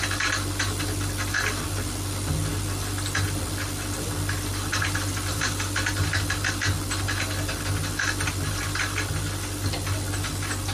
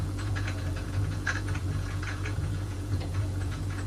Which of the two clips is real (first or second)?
first